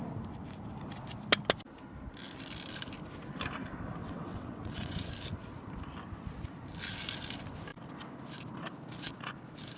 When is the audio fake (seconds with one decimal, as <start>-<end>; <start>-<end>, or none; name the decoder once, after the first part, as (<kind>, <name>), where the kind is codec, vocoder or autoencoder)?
4.0-5.1 (vocoder, WaveNeXt)